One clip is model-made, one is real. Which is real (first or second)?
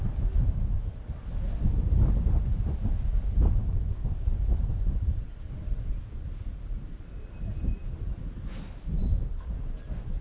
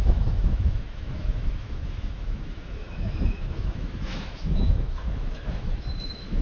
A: first